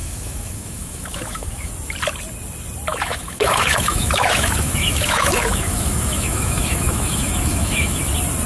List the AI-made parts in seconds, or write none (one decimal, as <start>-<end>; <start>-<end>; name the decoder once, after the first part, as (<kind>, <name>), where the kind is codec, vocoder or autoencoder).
0.0-1.7 (autoencoder, DAC-VAE); 2.9-8.0

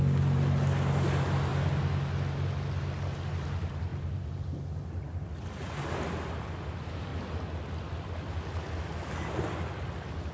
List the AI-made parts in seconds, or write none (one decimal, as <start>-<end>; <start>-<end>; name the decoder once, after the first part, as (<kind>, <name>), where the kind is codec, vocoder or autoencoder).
none

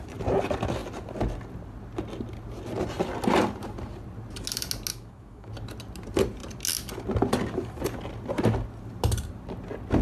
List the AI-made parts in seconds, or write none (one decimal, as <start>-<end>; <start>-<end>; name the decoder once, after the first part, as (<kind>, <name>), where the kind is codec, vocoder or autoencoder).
4.9-5.5 (autoencoder, DAC-VAE)

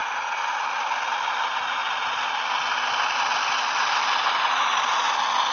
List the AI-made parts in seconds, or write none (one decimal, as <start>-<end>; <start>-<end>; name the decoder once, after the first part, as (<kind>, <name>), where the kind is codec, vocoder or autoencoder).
0.0-0.9 (vocoder, BigVGAN v2)

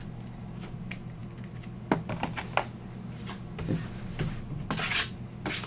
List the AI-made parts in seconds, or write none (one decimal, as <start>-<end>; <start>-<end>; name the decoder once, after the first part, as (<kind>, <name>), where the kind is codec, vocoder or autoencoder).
none

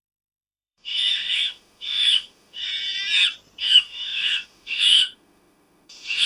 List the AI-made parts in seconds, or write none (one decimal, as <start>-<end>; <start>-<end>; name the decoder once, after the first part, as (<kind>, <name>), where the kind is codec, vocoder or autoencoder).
0.0-2.7 (autoencoder, DAC-VAE); 3.6-6.3

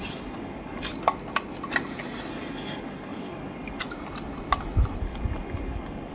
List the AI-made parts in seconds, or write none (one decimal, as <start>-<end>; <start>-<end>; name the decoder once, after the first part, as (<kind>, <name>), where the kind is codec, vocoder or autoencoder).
0.0-0.9 (codec, DAC); 2.3-3.8; 5.0-6.1